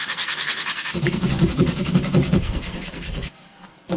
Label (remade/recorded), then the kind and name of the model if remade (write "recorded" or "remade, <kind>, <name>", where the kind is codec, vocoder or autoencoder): remade, codec, SNAC